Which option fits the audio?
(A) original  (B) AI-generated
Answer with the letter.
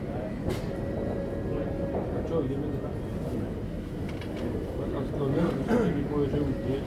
A